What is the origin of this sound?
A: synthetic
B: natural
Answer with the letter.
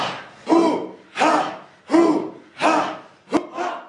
B